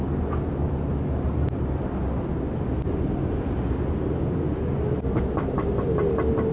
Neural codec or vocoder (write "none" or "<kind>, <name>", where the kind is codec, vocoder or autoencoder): none